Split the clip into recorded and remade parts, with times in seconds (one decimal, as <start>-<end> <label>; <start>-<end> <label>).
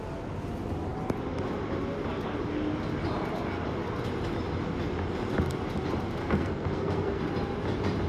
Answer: 0.0-6.2 recorded; 6.2-7.2 remade; 7.2-8.1 recorded